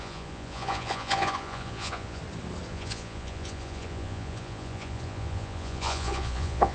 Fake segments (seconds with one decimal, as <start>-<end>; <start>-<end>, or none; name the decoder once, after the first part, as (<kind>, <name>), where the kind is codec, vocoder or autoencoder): 0.0-2.2 (vocoder, Vocos); 2.7-6.7